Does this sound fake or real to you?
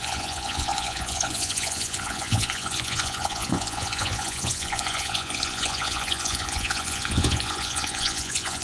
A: fake